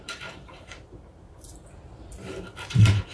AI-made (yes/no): yes